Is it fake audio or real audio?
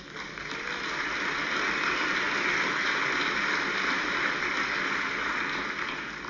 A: real